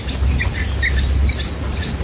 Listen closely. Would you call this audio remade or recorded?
recorded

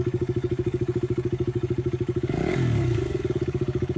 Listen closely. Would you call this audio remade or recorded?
remade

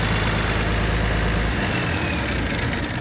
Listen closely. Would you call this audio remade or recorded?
recorded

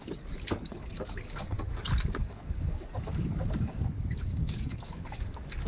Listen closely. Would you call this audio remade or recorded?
remade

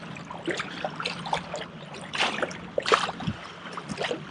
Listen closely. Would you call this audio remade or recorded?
recorded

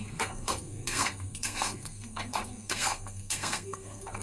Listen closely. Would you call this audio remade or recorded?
remade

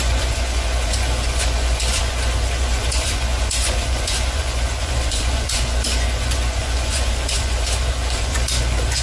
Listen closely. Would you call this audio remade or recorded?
remade